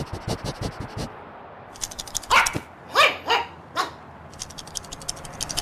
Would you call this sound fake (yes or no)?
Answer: no